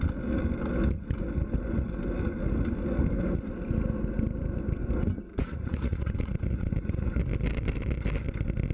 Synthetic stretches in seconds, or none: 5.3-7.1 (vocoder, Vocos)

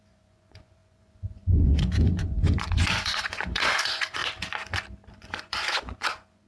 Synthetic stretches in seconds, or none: 0.0-4.2 (vocoder, Vocos); 5.1-6.5

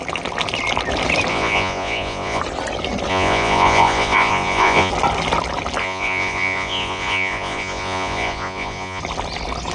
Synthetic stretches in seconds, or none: 1.3-2.4 (vocoder, Vocos); 3.1-4.9; 5.8-9.0